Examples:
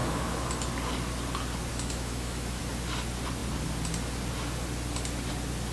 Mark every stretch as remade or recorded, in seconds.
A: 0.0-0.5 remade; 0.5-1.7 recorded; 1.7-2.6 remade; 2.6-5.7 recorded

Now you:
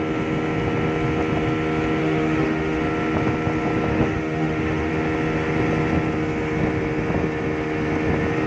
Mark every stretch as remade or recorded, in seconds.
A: 0.0-2.0 recorded; 2.0-2.8 remade; 2.8-3.9 recorded; 3.9-4.9 remade; 4.9-8.5 recorded

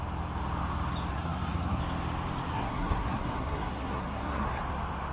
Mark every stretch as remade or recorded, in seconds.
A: 0.0-1.1 recorded; 1.1-1.8 remade; 1.8-2.5 recorded; 2.5-4.6 remade; 4.6-5.1 recorded

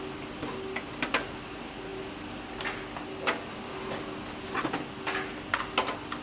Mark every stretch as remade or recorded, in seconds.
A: 0.0-6.2 recorded

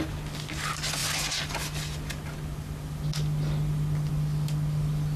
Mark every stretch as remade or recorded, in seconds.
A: 0.0-5.2 recorded

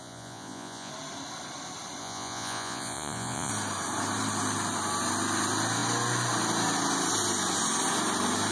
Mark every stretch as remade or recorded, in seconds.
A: 0.0-0.9 remade; 0.9-2.0 recorded; 2.0-3.5 remade; 3.5-8.5 recorded

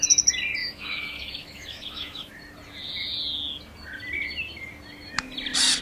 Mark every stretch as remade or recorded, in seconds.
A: 0.0-0.6 recorded; 0.6-2.3 remade; 2.3-5.8 recorded